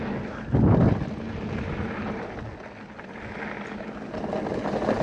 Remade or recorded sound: recorded